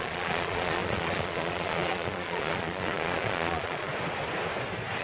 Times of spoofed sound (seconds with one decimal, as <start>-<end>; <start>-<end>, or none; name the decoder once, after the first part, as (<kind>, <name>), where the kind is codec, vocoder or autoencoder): 0.0-3.9 (vocoder, Vocos)

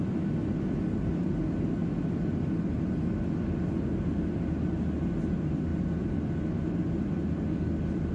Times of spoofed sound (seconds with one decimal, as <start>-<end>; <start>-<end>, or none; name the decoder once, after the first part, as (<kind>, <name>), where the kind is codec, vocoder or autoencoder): none

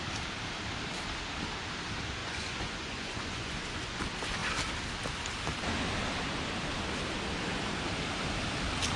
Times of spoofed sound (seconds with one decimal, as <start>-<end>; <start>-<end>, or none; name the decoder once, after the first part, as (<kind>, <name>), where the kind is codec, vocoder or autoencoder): 2.2-4.0 (vocoder, Vocos)

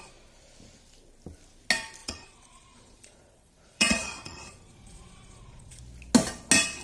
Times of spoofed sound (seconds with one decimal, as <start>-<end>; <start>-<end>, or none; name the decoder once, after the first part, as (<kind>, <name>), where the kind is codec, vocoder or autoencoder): 2.0-5.8 (vocoder, Vocos)

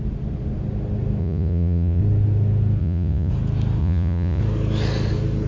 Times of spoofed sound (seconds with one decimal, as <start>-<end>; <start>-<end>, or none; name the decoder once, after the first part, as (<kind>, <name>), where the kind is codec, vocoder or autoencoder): 1.2-2.0 (vocoder, Vocos); 2.8-3.3; 3.8-4.4

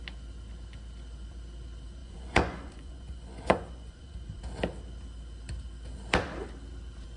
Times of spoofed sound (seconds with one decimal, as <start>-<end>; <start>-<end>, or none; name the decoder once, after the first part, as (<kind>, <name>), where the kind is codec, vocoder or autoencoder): 2.0-4.4 (vocoder, Vocos)

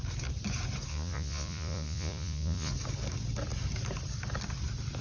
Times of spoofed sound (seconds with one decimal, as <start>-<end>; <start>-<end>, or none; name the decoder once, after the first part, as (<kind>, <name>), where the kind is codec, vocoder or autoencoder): 0.9-2.7 (vocoder, Vocos)